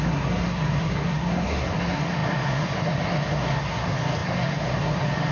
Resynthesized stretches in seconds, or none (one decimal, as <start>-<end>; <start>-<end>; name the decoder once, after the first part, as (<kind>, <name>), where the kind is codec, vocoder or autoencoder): 0.0-5.3 (codec, SNAC)